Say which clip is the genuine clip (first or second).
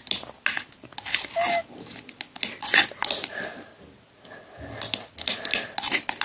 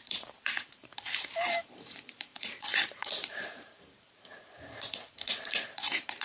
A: first